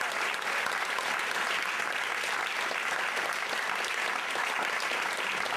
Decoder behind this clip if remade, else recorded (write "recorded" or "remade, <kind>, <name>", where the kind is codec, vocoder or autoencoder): recorded